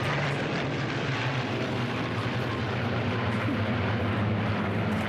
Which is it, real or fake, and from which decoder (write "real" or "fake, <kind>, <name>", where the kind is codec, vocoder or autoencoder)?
real